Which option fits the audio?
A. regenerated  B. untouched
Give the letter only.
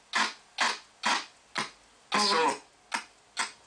B